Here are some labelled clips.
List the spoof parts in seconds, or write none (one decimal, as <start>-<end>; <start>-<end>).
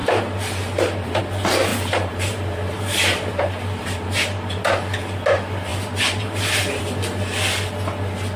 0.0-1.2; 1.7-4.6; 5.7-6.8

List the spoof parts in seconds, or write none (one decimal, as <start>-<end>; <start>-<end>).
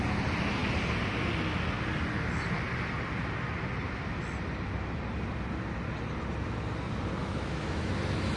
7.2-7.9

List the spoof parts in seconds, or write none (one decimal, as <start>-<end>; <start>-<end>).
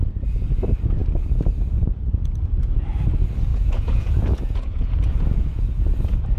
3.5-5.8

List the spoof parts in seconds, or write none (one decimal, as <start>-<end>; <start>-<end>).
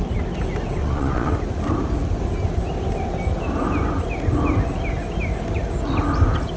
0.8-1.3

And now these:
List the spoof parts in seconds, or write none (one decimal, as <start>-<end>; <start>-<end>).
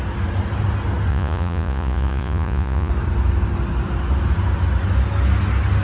1.1-2.9